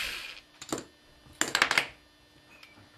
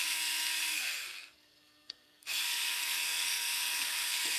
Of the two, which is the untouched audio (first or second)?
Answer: first